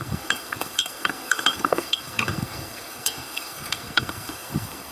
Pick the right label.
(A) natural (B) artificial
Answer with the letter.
B